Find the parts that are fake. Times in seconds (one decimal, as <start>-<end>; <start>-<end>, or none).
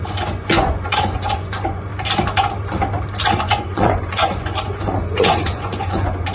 0.0-1.9; 3.4-6.3